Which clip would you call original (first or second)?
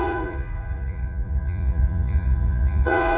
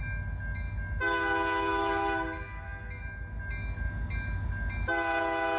second